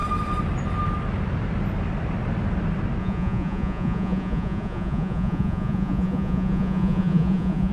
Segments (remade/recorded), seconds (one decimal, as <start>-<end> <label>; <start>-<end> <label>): 0.0-3.0 recorded; 3.0-7.7 remade